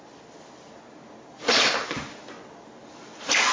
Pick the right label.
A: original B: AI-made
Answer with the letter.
A